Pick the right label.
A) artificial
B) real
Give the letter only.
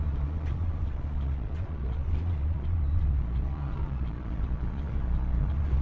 A